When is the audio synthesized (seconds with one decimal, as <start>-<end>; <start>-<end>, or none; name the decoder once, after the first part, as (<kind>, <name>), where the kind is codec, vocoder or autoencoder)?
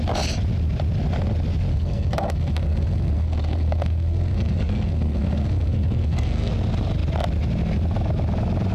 1.7-6.5 (codec, SNAC)